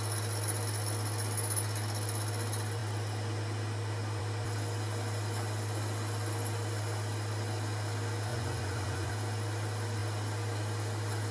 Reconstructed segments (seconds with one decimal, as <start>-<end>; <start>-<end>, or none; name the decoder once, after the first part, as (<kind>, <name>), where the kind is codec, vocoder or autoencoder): 8.3-9.1 (vocoder, Vocos)